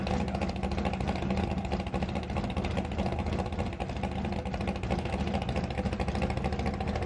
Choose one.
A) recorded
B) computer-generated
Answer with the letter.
A